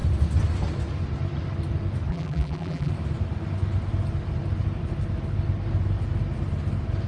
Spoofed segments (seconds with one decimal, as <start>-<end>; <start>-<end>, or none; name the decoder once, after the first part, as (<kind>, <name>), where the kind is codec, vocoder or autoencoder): 2.1-2.9 (vocoder, BigVGAN v2)